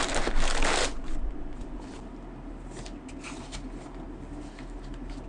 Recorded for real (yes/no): yes